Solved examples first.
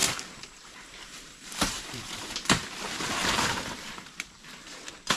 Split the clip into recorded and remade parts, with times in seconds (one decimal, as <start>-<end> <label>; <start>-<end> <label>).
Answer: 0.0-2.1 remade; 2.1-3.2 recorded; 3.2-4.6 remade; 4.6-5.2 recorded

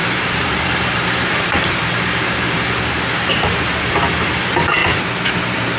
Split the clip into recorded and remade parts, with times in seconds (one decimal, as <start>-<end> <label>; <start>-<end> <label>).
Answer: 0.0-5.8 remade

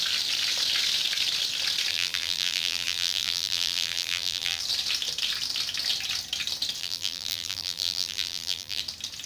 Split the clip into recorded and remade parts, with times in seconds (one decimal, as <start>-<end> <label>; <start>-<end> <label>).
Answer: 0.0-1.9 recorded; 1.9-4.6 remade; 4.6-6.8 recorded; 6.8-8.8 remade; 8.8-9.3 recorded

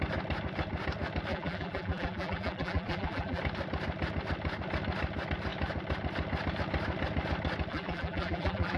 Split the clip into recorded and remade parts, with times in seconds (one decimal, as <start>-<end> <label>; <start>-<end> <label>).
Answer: 0.0-1.3 recorded; 1.3-3.4 remade; 3.4-7.7 recorded; 7.7-8.8 remade

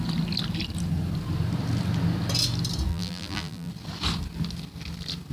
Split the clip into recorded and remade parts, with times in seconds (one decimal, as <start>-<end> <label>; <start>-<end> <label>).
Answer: 0.0-2.9 recorded; 2.9-3.7 remade; 3.7-5.3 recorded

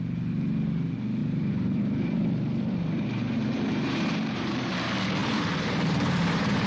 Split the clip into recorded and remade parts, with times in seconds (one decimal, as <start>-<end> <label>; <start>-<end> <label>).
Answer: 0.0-1.2 recorded; 1.2-4.7 remade; 4.7-5.2 recorded; 5.2-6.7 remade